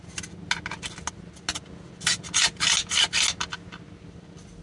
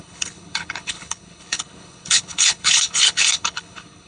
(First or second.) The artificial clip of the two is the second